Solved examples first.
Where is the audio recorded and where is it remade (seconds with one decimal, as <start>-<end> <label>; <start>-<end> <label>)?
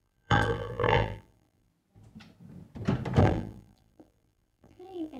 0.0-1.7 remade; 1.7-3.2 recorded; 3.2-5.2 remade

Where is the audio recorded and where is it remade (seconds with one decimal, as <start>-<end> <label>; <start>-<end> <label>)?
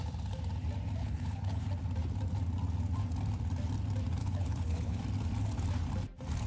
0.0-1.0 recorded; 1.0-1.6 remade; 1.6-4.2 recorded; 4.2-5.0 remade; 5.0-6.5 recorded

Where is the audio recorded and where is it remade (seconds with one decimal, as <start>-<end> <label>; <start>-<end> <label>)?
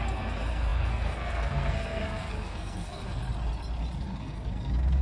0.0-3.2 remade; 3.2-4.0 recorded; 4.0-5.0 remade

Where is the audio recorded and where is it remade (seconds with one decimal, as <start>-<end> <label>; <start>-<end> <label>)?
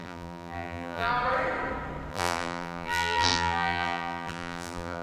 0.0-1.1 remade; 1.1-2.1 recorded; 2.1-5.0 remade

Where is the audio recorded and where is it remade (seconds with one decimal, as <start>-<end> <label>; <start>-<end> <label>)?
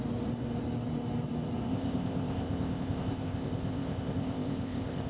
0.0-1.7 recorded; 1.7-5.1 remade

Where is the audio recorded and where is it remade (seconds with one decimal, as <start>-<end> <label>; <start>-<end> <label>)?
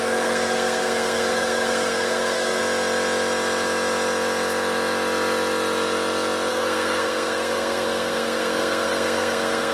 0.0-2.6 remade; 2.6-6.5 recorded; 6.5-9.7 remade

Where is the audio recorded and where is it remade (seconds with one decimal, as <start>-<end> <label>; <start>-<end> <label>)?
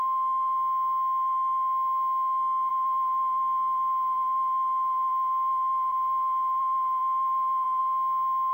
0.0-2.7 recorded; 2.7-7.8 remade; 7.8-8.5 recorded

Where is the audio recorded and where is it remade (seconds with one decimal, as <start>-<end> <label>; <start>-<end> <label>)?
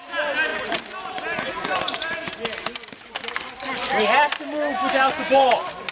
0.0-5.9 recorded